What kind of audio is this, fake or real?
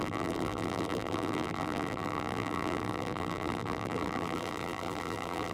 fake